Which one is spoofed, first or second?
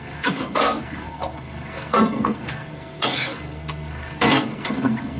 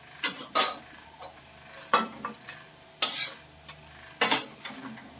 first